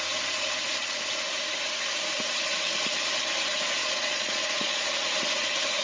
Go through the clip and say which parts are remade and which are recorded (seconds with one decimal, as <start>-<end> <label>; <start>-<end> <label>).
0.0-3.8 recorded; 3.8-4.9 remade; 4.9-5.8 recorded